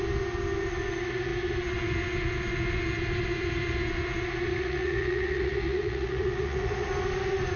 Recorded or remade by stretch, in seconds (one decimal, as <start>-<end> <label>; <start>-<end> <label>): 0.0-4.5 recorded; 4.5-6.9 remade; 6.9-7.6 recorded